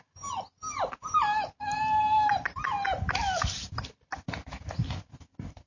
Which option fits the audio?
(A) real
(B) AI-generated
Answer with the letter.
A